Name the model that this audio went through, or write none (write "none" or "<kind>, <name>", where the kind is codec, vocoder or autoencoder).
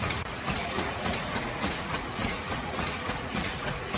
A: vocoder, Vocos